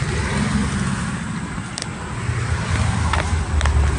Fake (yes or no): no